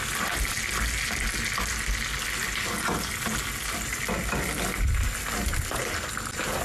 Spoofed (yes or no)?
no